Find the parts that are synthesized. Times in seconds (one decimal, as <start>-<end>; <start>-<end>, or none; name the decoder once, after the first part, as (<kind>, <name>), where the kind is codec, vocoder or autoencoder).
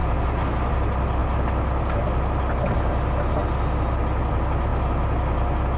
none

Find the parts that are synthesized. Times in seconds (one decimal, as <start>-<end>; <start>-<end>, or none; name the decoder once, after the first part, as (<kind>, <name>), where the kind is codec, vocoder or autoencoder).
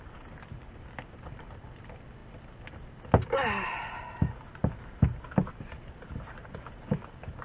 none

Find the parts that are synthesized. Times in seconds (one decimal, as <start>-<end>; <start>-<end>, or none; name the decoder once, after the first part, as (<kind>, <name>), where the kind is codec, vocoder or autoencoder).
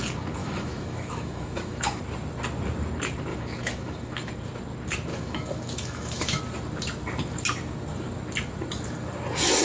0.4-2.0 (autoencoder, DAC-VAE); 3.3-4.3; 5.1-6.4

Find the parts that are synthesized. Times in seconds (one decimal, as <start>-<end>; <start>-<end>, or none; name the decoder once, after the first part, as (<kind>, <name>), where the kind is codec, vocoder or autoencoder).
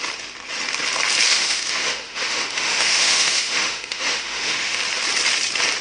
1.3-4.8 (autoencoder, DAC-VAE)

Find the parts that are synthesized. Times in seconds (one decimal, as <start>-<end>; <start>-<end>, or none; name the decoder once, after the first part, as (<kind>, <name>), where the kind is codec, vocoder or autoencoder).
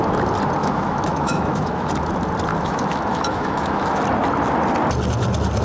0.6-1.9 (autoencoder, DAC-VAE); 2.5-4.0